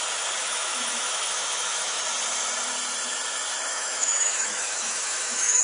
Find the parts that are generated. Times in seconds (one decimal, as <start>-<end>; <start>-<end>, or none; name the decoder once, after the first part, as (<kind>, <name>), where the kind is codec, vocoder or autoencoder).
0.4-2.0 (autoencoder, DAC-VAE); 3.7-5.6

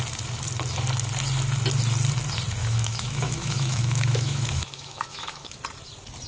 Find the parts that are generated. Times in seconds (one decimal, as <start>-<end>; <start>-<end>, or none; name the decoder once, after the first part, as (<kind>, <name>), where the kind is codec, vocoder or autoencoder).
2.6-5.6 (autoencoder, DAC-VAE)